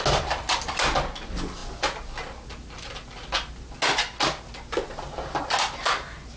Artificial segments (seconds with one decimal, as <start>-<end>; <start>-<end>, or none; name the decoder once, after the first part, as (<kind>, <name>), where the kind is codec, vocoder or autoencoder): none